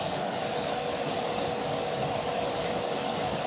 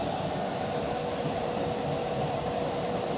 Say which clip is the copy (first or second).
first